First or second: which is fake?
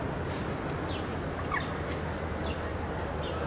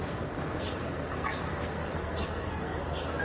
second